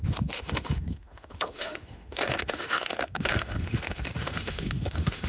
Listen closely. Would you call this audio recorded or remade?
remade